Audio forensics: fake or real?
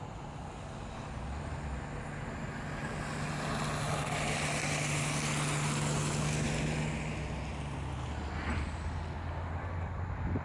real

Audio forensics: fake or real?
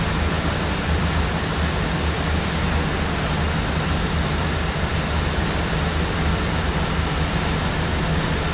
real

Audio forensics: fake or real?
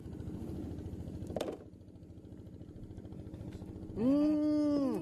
real